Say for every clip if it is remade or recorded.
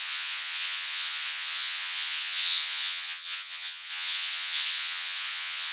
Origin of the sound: remade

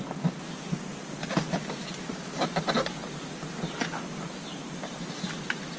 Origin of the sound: recorded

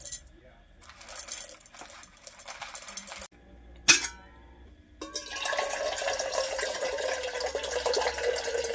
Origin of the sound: recorded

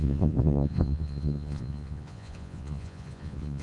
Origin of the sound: remade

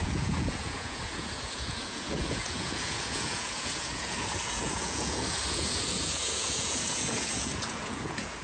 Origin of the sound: remade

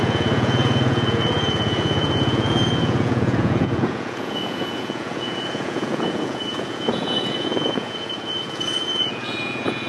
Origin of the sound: remade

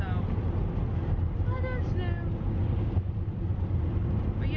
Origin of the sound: recorded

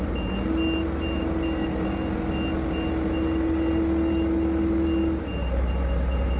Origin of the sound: recorded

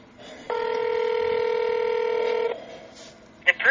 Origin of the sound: recorded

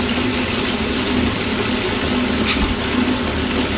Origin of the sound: recorded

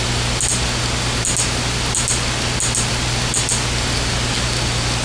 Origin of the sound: recorded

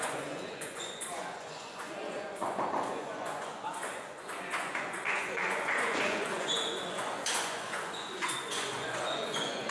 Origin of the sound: remade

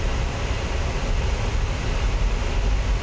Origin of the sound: recorded